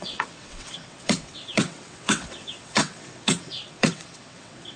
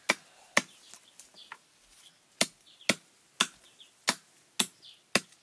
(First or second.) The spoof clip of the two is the first